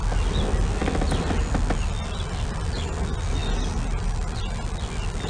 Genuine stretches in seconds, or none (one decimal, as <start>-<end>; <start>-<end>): 0.0-5.3